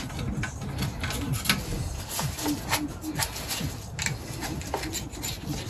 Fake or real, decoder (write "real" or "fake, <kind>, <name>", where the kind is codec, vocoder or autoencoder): real